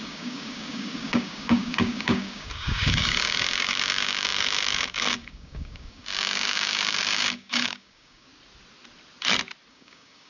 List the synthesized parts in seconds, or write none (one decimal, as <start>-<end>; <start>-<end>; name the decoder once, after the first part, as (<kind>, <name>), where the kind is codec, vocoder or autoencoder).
0.0-8.3 (codec, DAC); 9.7-10.3